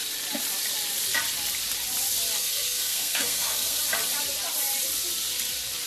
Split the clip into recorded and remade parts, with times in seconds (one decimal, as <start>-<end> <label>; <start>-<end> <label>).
0.0-2.4 recorded; 2.4-3.8 remade; 3.8-5.9 recorded